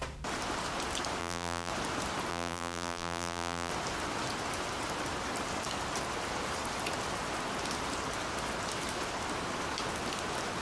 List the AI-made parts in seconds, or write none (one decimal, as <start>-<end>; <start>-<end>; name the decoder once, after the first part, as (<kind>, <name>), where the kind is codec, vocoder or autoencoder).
1.2-1.7 (vocoder, BigVGAN v2); 2.3-3.7